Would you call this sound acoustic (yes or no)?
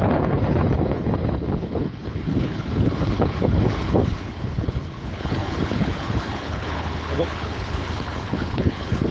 no